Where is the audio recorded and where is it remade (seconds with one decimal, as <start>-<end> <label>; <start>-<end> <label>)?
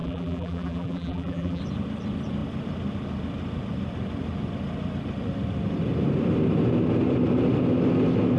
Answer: 0.0-1.6 remade; 1.6-8.4 recorded